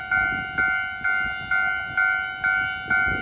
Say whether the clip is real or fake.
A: real